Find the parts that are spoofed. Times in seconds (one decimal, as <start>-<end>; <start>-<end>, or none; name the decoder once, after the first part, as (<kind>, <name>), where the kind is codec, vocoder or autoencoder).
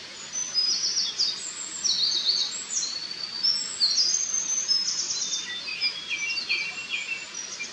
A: none